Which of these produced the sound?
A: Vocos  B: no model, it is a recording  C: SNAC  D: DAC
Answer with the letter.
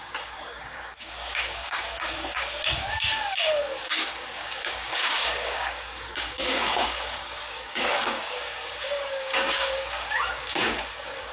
D